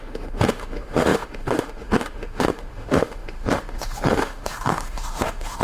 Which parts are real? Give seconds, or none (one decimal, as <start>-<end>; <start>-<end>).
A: none